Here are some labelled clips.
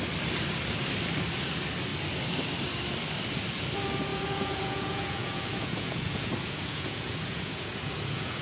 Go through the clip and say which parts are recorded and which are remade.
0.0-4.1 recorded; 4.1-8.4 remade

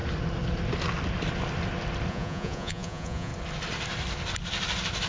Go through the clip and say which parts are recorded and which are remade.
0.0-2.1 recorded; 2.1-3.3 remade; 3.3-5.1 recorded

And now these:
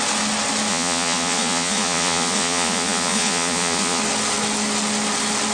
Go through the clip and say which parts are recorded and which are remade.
0.0-0.7 recorded; 0.7-4.0 remade; 4.0-5.5 recorded